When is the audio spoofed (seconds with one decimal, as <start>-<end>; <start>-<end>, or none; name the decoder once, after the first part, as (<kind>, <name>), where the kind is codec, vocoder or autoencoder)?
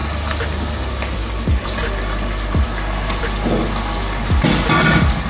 none